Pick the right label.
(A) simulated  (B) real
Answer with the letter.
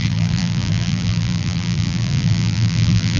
A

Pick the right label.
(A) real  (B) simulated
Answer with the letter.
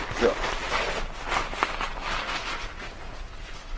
A